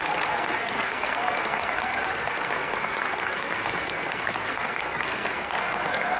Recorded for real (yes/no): no